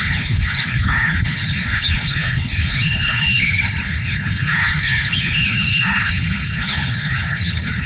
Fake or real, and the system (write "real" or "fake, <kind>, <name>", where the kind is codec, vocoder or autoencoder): fake, codec, HILCodec